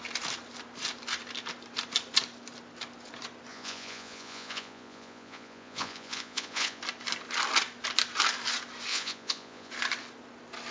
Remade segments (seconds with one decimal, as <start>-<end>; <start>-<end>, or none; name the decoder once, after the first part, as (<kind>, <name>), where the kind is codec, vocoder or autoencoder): 3.5-6.8 (vocoder, Vocos); 8.9-9.7